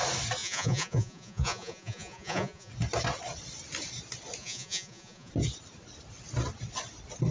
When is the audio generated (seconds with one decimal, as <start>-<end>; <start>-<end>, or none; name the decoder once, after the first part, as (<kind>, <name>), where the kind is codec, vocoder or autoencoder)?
0.4-2.7 (vocoder, Vocos); 4.4-5.3

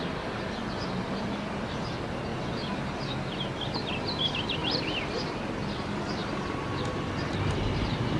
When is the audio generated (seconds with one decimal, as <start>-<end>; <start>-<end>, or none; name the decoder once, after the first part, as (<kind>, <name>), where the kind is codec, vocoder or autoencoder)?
4.6-5.4 (vocoder, BigVGAN v2); 6.2-6.8

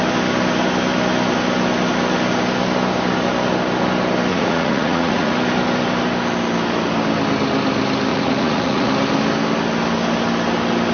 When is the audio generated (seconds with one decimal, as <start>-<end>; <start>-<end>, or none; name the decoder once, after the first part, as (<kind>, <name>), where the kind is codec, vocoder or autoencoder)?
4.3-5.3 (vocoder, Vocos); 8.1-8.9